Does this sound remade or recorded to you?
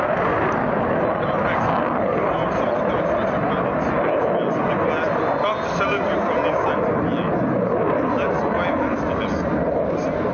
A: recorded